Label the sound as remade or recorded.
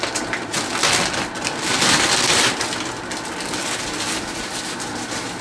recorded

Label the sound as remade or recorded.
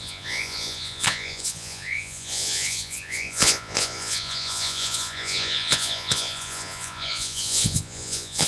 remade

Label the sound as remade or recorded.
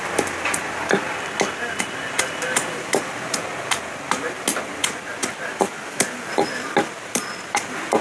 recorded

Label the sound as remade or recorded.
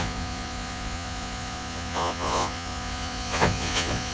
remade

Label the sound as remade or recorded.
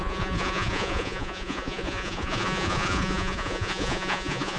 remade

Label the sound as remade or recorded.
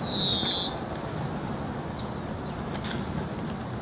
recorded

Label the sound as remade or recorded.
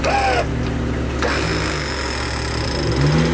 recorded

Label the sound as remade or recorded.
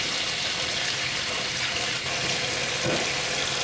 recorded